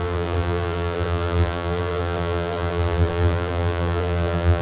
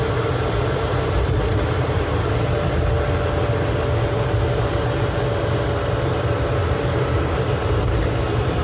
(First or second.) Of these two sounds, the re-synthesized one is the first